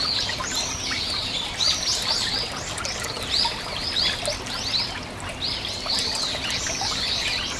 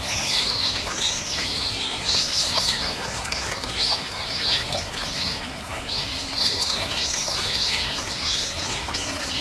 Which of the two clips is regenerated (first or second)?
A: second